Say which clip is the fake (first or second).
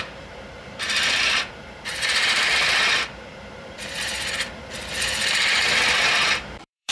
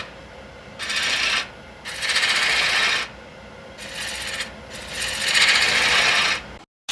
first